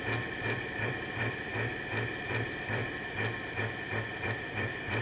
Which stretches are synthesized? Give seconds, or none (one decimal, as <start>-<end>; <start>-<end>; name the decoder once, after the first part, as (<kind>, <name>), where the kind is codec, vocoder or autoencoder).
0.0-1.5 (vocoder, BigVGAN v2); 2.1-2.8; 4.2-5.0